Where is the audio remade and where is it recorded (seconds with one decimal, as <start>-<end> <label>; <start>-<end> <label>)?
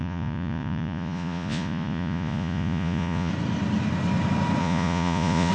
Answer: 0.0-3.3 remade; 3.3-4.6 recorded; 4.6-5.5 remade